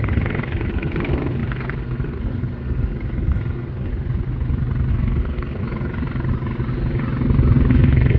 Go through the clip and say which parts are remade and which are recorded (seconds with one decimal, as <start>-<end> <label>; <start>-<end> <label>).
0.0-3.9 remade; 3.9-4.9 recorded; 4.9-5.6 remade; 5.6-7.7 recorded; 7.7-8.2 remade